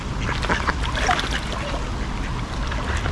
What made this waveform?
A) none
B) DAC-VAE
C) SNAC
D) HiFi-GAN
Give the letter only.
A